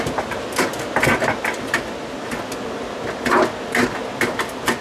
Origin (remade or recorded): recorded